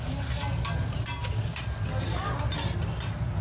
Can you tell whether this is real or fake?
real